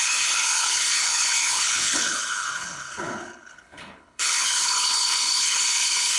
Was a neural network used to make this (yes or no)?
yes